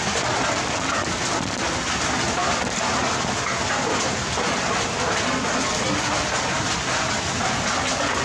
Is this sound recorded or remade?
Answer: recorded